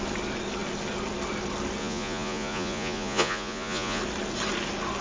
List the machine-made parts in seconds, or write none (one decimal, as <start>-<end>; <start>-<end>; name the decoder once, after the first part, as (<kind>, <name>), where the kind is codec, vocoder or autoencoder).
1.8-4.0 (vocoder, Vocos)